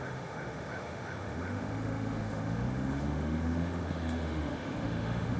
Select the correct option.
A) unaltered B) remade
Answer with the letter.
B